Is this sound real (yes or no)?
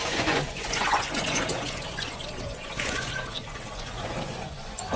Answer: no